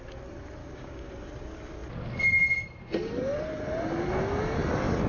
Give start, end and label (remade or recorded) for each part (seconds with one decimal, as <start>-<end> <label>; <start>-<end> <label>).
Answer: 0.0-0.6 recorded; 0.6-1.1 remade; 1.1-5.1 recorded